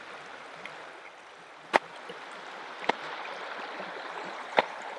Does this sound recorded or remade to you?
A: recorded